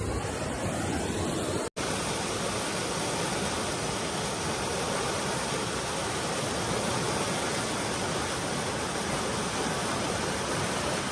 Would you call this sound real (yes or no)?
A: yes